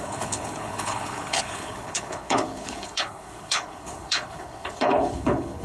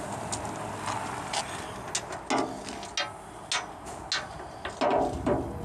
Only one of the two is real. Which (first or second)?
second